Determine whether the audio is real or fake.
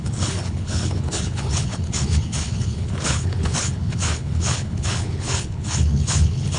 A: fake